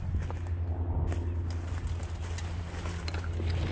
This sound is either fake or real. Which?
real